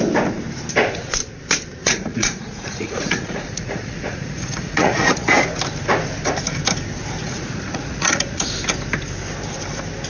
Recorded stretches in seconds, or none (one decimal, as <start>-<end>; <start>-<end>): 0.0-1.8; 5.4-7.2; 8.5-10.1